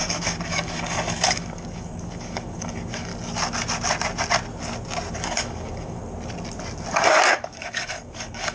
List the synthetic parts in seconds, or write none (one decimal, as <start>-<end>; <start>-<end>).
0.0-3.1; 5.1-6.0; 6.9-8.5